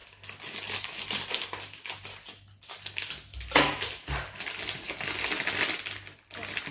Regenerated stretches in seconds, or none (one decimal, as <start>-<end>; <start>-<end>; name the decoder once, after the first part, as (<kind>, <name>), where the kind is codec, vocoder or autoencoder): none